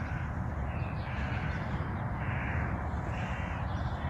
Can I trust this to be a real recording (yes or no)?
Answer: no